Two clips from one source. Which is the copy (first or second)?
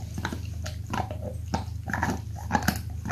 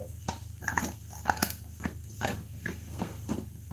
second